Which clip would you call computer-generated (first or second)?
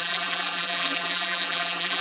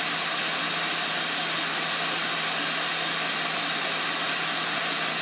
first